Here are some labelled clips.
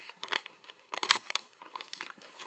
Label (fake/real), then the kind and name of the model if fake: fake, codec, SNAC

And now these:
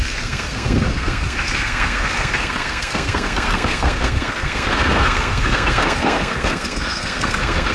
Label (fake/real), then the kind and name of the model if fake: fake, codec, SNAC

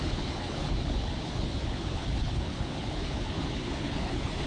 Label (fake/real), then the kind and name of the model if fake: fake, codec, HILCodec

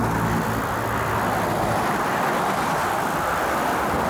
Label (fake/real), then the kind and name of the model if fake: real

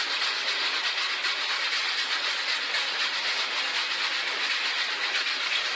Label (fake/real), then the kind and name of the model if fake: real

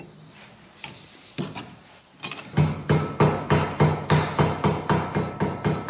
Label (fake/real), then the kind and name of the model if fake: real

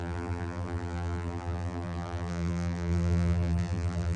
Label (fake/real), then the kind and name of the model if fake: fake, vocoder, BigVGAN v2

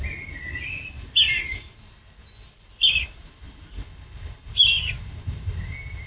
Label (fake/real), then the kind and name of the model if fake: real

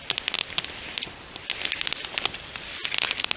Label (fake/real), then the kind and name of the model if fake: real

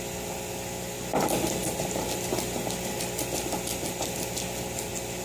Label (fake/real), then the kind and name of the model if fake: real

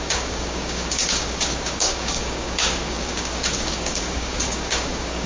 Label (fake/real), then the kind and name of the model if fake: fake, codec, DAC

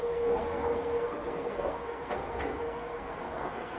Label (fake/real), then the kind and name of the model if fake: fake, codec, SNAC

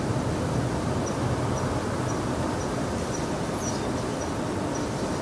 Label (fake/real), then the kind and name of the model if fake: real